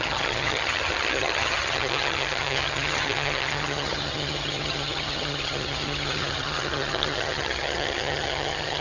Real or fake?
fake